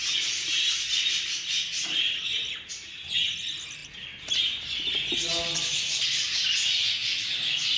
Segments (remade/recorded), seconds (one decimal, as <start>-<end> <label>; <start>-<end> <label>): 0.0-7.0 recorded; 7.0-7.8 remade